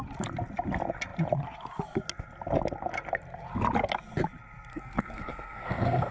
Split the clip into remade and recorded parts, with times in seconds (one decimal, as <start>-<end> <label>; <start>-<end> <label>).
0.0-4.7 recorded; 4.7-6.1 remade

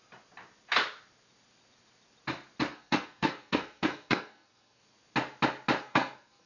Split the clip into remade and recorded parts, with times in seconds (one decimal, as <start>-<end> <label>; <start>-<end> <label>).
0.0-2.7 recorded; 2.7-4.8 remade; 4.8-5.8 recorded; 5.8-6.5 remade

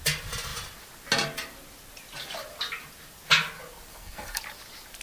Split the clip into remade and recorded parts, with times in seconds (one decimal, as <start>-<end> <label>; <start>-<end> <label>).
0.0-3.9 recorded; 3.9-4.4 remade; 4.4-5.0 recorded

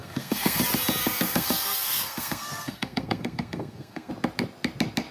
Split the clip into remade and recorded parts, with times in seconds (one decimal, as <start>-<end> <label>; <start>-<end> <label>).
0.0-0.6 remade; 0.6-1.0 recorded; 1.0-4.1 remade; 4.1-5.1 recorded

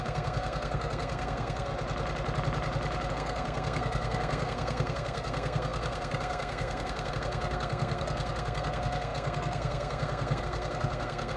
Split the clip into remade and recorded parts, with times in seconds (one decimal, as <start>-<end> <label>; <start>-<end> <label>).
0.0-1.7 remade; 1.7-3.1 recorded; 3.1-11.4 remade